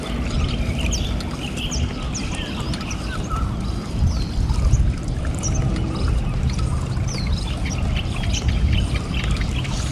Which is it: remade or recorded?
recorded